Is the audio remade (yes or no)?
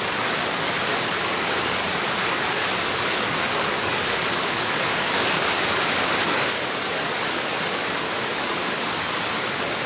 yes